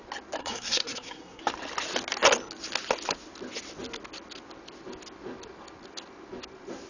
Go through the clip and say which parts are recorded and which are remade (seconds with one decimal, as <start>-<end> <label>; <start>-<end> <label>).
0.0-0.4 recorded; 0.4-1.4 remade; 1.4-6.9 recorded